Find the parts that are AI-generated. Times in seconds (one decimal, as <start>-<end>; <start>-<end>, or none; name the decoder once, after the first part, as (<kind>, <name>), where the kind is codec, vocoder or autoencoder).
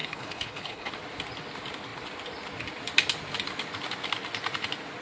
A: 0.0-0.9 (codec, HILCodec)